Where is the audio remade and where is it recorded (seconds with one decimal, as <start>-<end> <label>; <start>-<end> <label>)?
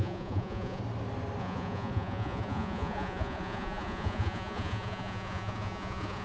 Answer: 0.0-0.8 remade; 0.8-1.4 recorded; 1.4-6.2 remade